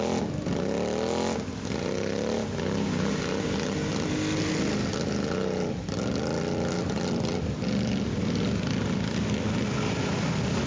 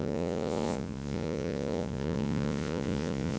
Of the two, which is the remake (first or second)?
second